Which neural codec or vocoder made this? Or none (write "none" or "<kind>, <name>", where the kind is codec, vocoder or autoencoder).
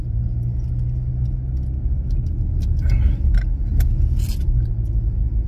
none